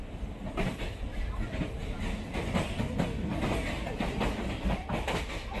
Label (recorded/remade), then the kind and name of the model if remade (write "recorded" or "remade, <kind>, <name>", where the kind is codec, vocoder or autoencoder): recorded